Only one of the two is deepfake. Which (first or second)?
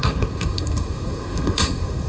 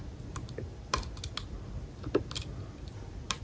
first